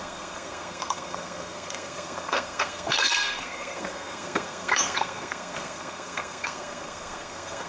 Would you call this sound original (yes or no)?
no